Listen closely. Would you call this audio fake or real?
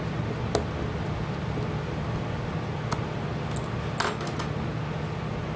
real